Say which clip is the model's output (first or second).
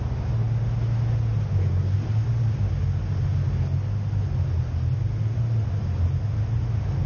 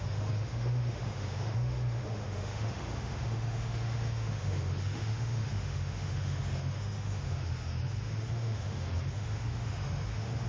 second